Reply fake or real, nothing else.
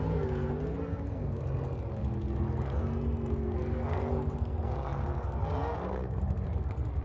fake